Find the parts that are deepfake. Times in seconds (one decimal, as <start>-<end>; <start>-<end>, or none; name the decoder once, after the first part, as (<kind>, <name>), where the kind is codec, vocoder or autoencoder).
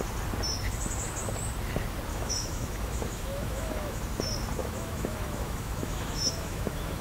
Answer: 2.1-4.0 (autoencoder, DAC-VAE); 4.6-7.0